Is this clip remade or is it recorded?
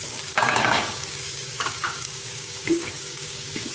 remade